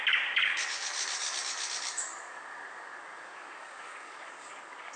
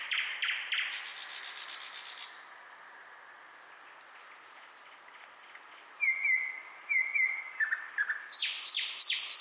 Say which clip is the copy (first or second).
first